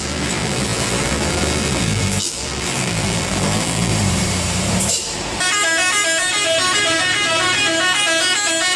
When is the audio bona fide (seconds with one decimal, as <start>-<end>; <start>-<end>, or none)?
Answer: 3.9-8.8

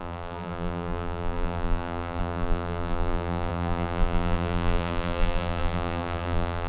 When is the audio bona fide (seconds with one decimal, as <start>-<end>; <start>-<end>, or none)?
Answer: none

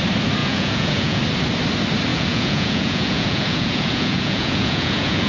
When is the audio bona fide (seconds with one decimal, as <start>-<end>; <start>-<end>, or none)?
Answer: 0.0-0.4; 1.2-2.1